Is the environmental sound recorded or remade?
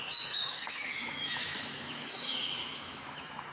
remade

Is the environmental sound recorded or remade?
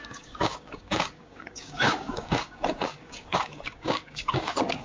remade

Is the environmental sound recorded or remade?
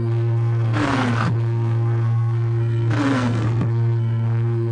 remade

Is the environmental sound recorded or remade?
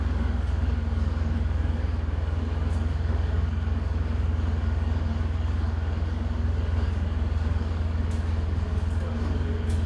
remade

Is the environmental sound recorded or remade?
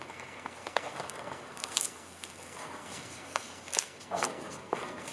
remade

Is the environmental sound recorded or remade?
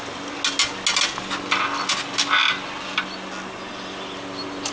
recorded